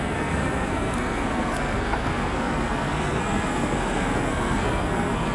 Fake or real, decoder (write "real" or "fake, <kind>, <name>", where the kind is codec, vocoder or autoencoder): fake, codec, SNAC